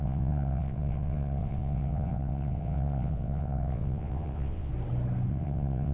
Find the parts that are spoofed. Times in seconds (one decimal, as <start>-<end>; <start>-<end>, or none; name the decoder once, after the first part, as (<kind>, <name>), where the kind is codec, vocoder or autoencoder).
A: 0.0-4.7 (vocoder, WaveNeXt); 5.3-5.9

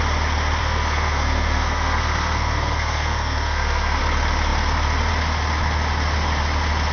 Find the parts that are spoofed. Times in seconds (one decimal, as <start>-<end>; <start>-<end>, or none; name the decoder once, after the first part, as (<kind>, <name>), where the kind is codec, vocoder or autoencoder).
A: 0.6-4.0 (codec, SNAC)

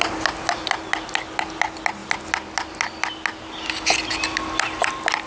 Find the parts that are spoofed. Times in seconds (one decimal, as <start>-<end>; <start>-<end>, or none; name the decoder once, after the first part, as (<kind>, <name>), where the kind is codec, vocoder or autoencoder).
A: none

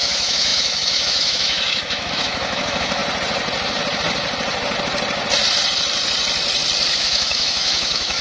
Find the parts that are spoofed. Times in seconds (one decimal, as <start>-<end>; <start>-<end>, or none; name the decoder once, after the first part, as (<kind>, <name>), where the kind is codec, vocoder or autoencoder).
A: 0.0-3.0 (autoencoder, DAC-VAE); 6.9-8.2